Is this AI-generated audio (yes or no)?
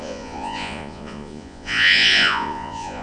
yes